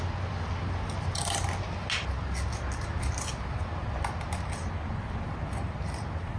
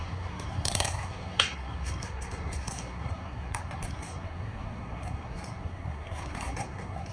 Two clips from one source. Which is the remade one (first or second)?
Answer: second